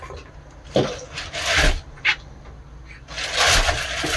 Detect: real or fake real